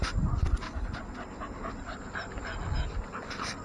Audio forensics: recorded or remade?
recorded